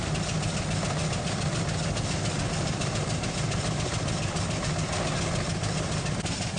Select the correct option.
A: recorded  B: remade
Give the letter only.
A